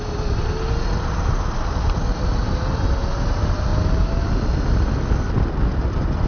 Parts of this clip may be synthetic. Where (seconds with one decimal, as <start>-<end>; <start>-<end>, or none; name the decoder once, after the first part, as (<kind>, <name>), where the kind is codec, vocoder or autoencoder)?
none